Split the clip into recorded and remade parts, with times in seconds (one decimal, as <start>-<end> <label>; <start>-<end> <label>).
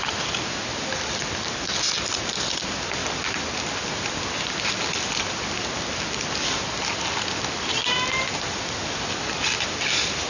0.0-10.3 recorded